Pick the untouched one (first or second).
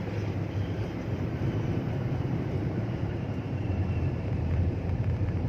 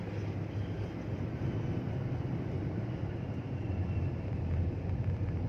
second